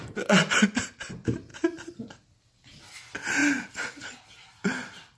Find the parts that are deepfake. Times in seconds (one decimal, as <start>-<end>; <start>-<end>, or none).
0.0-0.6; 1.5-2.4; 3.4-5.2